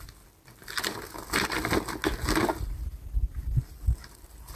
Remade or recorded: recorded